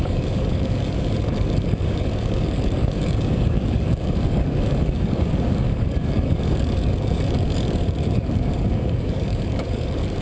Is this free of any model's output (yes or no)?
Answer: no